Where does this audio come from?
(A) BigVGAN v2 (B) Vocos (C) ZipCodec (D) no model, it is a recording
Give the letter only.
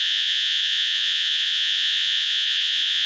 B